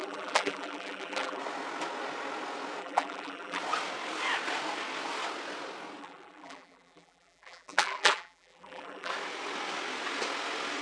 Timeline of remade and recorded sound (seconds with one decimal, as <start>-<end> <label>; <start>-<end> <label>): 0.0-1.4 remade; 1.4-2.8 recorded; 2.8-3.6 remade; 3.6-6.0 recorded; 6.0-9.1 remade; 9.1-10.8 recorded